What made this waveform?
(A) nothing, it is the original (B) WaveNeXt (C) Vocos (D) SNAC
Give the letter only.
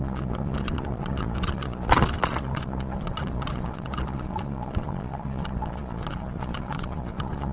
C